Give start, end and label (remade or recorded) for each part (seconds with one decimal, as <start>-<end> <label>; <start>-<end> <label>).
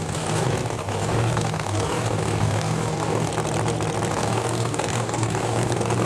0.0-3.3 remade; 3.3-4.1 recorded; 4.1-6.1 remade